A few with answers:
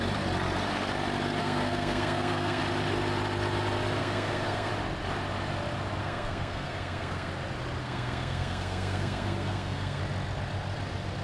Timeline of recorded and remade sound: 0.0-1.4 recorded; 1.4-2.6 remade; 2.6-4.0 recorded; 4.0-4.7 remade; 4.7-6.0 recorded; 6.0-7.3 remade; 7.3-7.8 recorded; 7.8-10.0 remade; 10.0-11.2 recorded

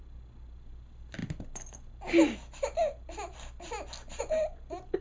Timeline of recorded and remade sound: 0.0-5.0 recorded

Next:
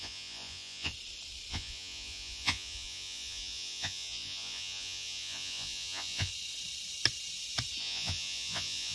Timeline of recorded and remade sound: 0.0-0.9 remade; 0.9-1.5 recorded; 1.5-6.3 remade; 6.3-7.8 recorded; 7.8-8.9 remade

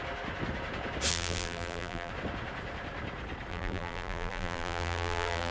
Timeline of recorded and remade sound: 0.0-1.1 recorded; 1.1-2.1 remade; 2.1-3.5 recorded; 3.5-5.5 remade